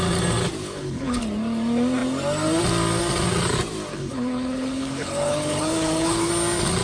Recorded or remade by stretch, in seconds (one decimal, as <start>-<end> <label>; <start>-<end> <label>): 0.0-0.6 recorded; 0.6-1.2 remade; 1.2-3.9 recorded; 3.9-6.3 remade; 6.3-6.8 recorded